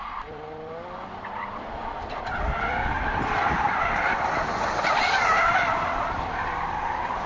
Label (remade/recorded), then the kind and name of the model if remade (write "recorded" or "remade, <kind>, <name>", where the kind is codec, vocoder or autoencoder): remade, vocoder, BigVGAN v2